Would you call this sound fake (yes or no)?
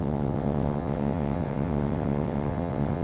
yes